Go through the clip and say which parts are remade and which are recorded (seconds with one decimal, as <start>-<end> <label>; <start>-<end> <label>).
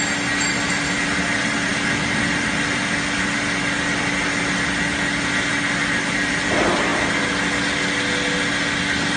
0.0-9.2 recorded